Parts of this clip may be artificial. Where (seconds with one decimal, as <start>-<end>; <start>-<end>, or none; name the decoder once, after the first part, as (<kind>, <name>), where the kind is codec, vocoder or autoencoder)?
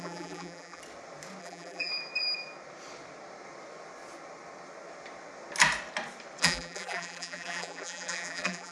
0.0-0.8 (vocoder, BigVGAN v2); 1.4-1.9; 6.4-8.7